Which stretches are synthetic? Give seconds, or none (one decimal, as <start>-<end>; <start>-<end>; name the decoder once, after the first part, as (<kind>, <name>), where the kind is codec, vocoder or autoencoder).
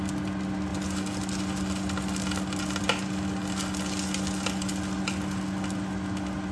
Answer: none